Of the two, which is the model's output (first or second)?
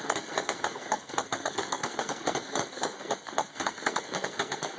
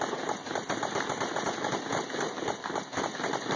first